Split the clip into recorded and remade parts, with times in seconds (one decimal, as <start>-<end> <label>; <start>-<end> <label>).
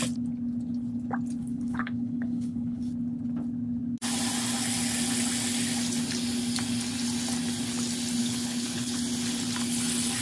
0.0-1.4 recorded; 1.4-2.9 remade; 2.9-8.2 recorded; 8.2-9.0 remade; 9.0-10.2 recorded